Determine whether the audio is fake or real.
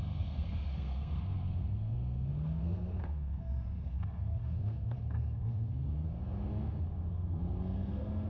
fake